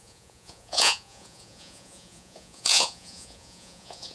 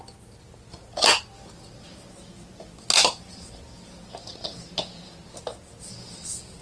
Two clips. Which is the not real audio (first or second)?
first